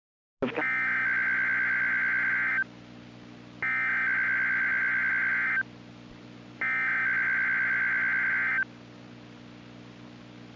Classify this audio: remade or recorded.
recorded